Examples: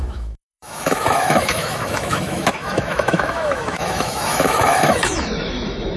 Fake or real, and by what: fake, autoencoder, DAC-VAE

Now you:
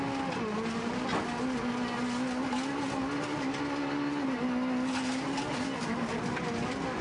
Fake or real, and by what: real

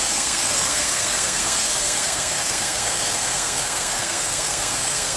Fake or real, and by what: fake, codec, SNAC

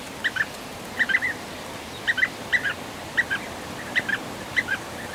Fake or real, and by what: real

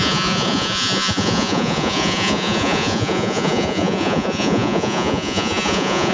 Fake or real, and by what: fake, vocoder, Vocos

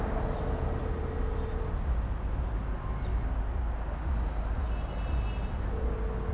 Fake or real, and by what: real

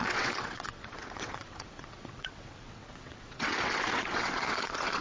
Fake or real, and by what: fake, vocoder, WaveNeXt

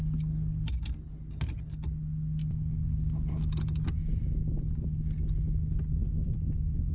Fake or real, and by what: real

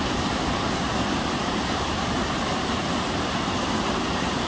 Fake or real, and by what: fake, vocoder, BigVGAN v2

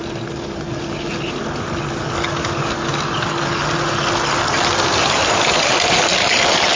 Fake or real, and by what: real